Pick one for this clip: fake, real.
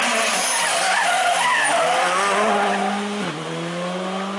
real